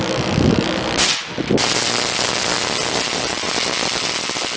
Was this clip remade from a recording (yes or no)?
no